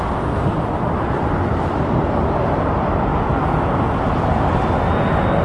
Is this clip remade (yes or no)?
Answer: no